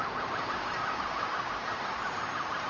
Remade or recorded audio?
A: remade